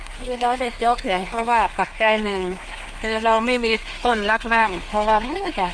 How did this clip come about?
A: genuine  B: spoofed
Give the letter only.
B